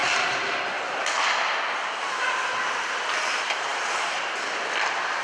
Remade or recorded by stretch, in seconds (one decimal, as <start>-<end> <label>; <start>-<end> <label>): 0.0-5.2 recorded